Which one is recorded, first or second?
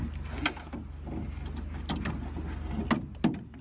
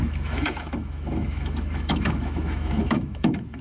first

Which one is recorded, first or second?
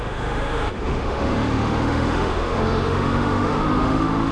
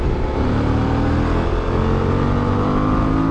second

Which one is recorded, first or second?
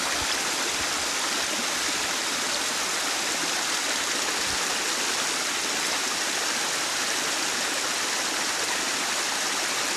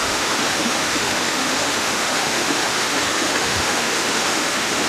first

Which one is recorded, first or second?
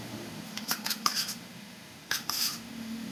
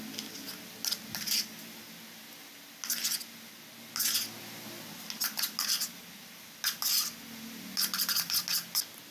second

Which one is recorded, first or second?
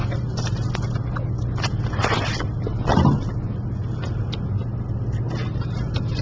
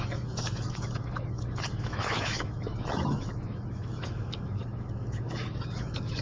first